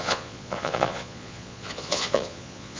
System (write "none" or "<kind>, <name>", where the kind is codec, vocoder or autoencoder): vocoder, Vocos